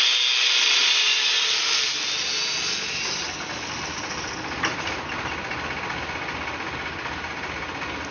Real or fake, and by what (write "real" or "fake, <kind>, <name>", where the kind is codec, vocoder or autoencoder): real